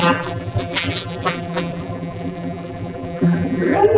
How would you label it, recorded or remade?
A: remade